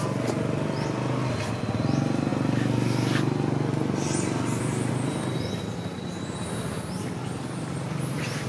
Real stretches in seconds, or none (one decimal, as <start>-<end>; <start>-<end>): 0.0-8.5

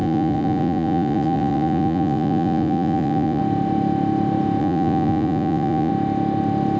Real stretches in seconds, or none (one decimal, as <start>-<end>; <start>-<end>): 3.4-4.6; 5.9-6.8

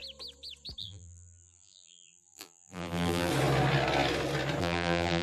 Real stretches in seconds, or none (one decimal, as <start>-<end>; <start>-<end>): 0.0-0.8; 3.3-4.6

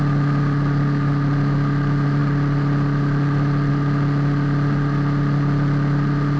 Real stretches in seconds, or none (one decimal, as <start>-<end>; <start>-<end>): 0.0-6.4